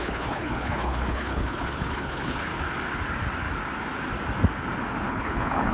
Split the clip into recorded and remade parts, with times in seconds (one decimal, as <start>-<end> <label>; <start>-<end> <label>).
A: 0.0-2.5 remade; 2.5-5.1 recorded; 5.1-5.7 remade